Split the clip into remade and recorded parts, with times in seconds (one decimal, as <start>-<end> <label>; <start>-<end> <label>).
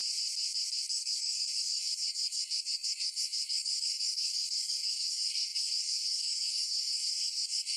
0.0-0.9 recorded; 0.9-7.8 remade